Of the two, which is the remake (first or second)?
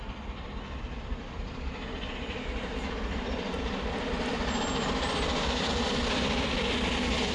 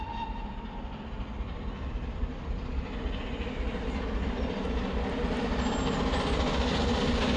first